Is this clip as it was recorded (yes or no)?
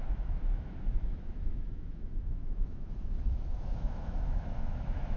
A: no